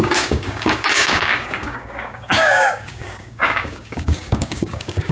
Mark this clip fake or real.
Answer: fake